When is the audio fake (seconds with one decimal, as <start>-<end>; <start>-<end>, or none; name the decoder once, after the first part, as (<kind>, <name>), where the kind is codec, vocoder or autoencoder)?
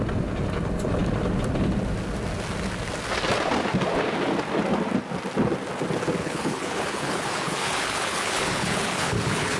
6.2-9.6 (codec, HILCodec)